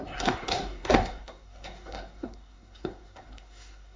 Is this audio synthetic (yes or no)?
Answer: yes